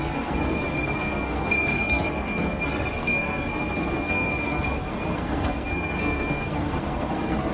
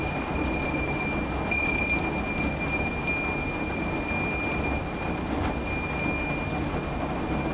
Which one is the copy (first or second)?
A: first